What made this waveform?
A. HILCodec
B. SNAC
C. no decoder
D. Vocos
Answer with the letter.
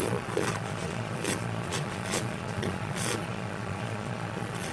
D